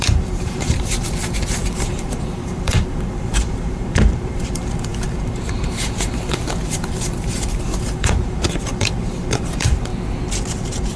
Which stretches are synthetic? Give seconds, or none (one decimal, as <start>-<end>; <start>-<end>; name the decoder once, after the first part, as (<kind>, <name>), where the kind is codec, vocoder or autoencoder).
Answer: 0.0-9.9 (vocoder, BigVGAN v2); 10.5-11.0